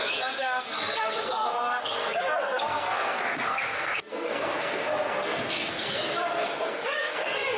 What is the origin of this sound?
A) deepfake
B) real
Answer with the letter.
A